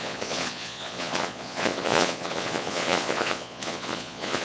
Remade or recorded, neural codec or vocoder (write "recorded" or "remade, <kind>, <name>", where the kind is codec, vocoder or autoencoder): remade, vocoder, Vocos